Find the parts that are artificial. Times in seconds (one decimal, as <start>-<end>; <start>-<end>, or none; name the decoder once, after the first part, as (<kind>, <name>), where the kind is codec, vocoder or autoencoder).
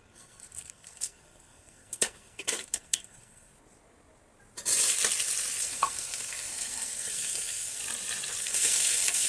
0.0-3.5 (codec, SNAC); 5.6-7.8; 8.4-9.3